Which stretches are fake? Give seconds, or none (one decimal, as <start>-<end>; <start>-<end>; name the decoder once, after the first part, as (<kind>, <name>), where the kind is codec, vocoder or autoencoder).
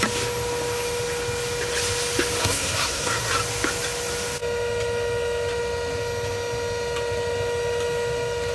2.4-3.3 (codec, SNAC)